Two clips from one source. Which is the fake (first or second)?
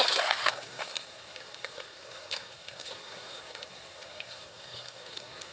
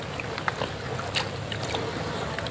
first